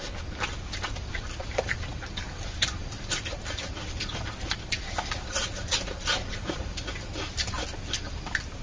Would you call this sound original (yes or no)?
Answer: yes